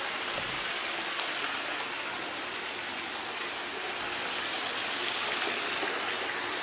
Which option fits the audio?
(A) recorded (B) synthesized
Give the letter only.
A